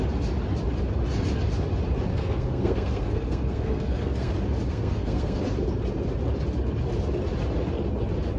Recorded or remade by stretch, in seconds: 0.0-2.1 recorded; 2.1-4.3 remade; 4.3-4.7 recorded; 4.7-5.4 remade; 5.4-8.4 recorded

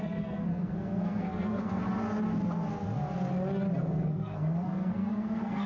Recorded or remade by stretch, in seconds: 0.0-1.8 remade; 1.8-3.8 recorded; 3.8-5.7 remade

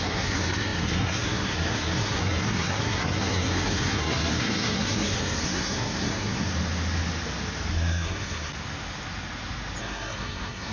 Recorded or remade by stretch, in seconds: 0.0-6.5 remade; 6.5-7.7 recorded; 7.7-8.5 remade; 8.5-9.8 recorded; 9.8-10.7 remade

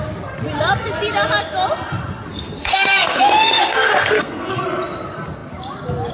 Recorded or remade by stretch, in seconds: 0.0-2.3 recorded; 2.3-4.6 remade; 4.6-6.1 recorded

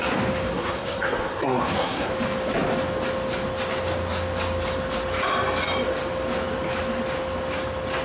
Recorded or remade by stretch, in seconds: 0.0-0.5 recorded; 0.5-2.1 remade; 2.1-8.0 recorded

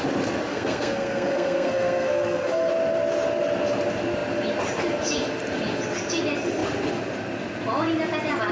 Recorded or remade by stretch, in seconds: 0.0-0.5 recorded; 0.5-2.7 remade; 2.7-8.5 recorded

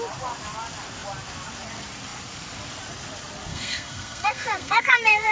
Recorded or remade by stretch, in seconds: 0.0-3.5 recorded; 3.5-5.3 remade

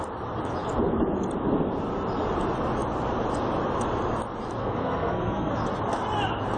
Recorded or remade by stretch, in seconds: 0.0-4.6 recorded; 4.6-5.5 remade; 5.5-6.6 recorded